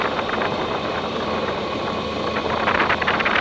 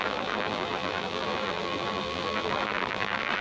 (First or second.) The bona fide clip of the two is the first